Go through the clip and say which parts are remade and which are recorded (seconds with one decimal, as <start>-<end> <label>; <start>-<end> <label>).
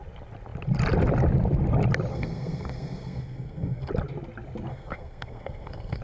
0.0-2.1 recorded; 2.1-3.9 remade; 3.9-4.7 recorded; 4.7-6.0 remade